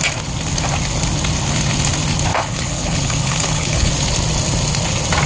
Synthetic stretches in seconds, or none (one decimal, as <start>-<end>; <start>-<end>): 2.3-3.9